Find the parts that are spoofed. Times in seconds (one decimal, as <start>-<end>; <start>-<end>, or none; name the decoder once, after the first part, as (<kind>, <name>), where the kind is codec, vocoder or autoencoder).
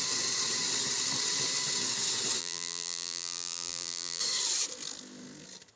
2.4-4.2 (vocoder, BigVGAN v2)